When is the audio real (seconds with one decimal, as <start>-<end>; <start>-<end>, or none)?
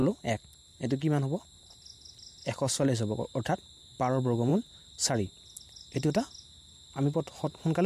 0.0-2.1; 2.7-3.9; 4.5-7.9